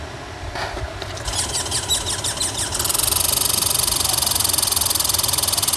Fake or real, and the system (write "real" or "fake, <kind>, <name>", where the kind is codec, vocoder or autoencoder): real